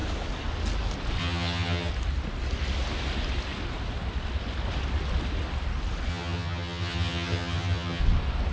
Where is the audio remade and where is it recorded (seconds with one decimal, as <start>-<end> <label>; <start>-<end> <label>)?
0.0-1.2 recorded; 1.2-1.9 remade; 1.9-6.1 recorded; 6.1-8.0 remade; 8.0-8.5 recorded

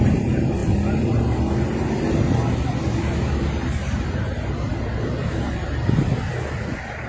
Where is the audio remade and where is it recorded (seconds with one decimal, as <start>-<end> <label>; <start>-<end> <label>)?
0.0-7.1 recorded

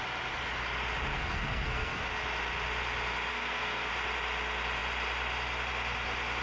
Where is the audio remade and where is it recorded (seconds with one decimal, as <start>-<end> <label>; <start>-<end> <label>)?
0.0-1.1 recorded; 1.1-2.0 remade; 2.0-3.3 recorded; 3.3-3.9 remade; 3.9-6.4 recorded

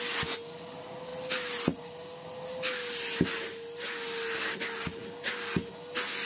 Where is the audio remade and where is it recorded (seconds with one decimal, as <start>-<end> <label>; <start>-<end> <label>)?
0.0-6.3 recorded

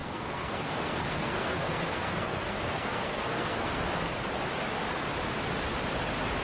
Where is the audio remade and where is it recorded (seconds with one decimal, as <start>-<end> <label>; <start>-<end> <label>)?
0.0-3.8 remade; 3.8-6.4 recorded

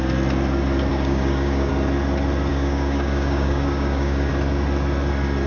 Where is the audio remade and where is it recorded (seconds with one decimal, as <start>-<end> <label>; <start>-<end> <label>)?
0.0-0.9 recorded; 0.9-1.7 remade; 1.7-2.5 recorded; 2.5-4.3 remade; 4.3-5.5 recorded